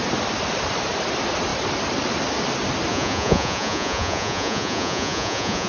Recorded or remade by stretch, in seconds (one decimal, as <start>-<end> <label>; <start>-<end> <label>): 0.0-2.9 recorded; 2.9-5.7 remade